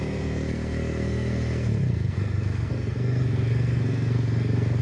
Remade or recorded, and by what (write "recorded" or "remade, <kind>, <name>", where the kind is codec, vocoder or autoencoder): remade, codec, SNAC